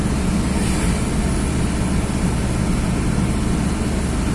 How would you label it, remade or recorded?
recorded